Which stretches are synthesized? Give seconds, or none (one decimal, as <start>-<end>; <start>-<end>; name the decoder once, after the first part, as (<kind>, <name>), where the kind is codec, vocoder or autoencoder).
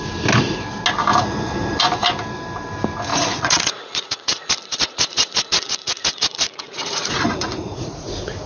3.1-8.1 (vocoder, Vocos)